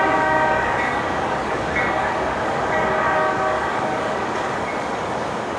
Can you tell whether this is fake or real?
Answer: fake